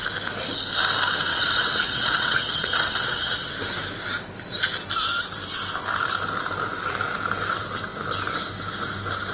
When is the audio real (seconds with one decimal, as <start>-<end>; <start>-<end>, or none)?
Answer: 0.0-1.3; 3.5-9.3